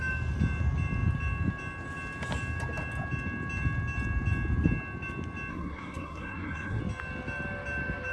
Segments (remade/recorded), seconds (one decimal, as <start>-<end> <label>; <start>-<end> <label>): 0.0-5.5 recorded; 5.5-6.8 remade; 6.8-8.1 recorded